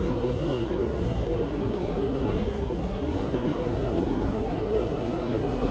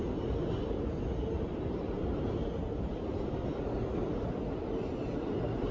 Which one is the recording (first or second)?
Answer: second